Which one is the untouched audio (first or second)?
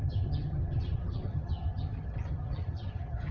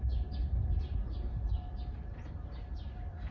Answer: second